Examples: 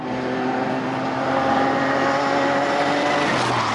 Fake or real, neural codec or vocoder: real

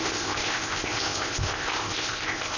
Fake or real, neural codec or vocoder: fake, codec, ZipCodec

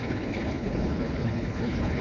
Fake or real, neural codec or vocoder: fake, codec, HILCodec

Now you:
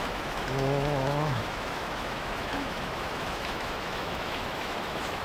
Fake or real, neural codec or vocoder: fake, autoencoder, DAC-VAE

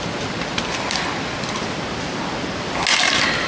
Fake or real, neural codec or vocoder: real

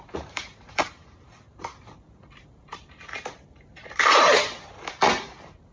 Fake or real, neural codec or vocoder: fake, vocoder, BigVGAN v2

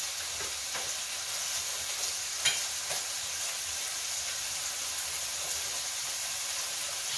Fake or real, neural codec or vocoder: real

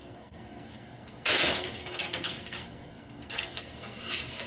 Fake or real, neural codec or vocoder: fake, codec, SNAC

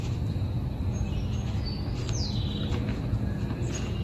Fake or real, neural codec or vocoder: real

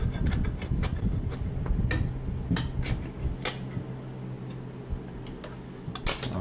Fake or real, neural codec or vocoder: real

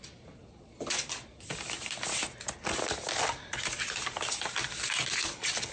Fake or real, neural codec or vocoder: real